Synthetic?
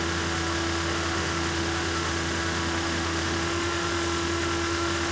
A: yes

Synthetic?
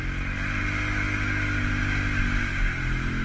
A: no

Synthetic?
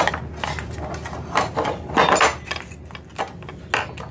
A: no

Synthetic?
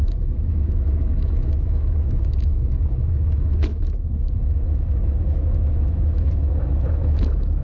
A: yes